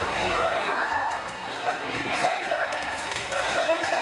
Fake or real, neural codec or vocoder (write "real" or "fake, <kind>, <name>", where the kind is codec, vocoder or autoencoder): fake, codec, SNAC